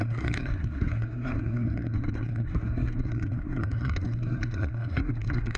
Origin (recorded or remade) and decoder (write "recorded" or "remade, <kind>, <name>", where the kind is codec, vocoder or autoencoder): remade, codec, SNAC